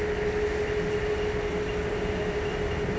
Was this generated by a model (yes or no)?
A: no